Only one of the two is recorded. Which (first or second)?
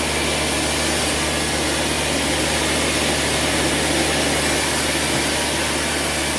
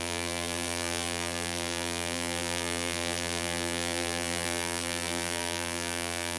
first